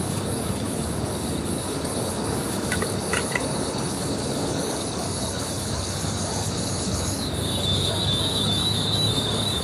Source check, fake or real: fake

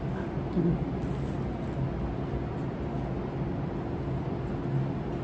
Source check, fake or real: real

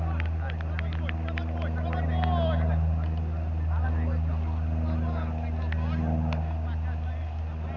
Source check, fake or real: real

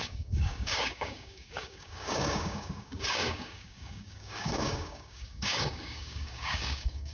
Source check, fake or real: fake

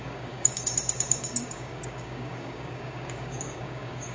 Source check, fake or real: fake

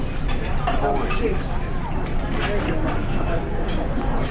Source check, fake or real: real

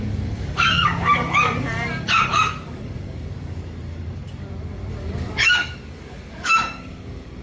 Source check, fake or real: fake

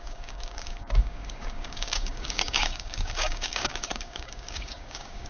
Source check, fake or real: fake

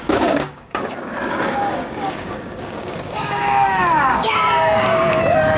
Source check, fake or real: fake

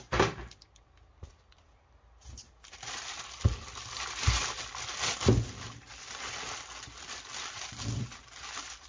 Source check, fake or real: real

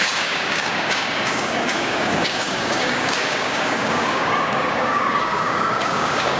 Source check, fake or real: fake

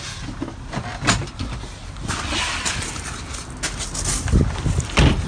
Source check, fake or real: real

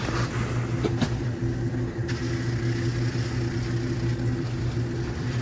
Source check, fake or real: real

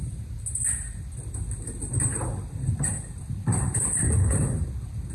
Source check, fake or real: real